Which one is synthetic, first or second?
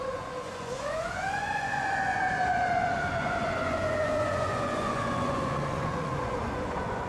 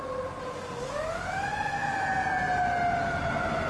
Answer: first